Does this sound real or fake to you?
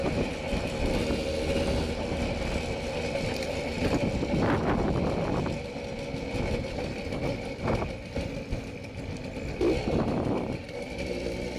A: real